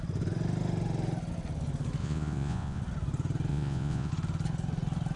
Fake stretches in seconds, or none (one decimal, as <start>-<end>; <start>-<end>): 2.0-2.8; 3.5-4.1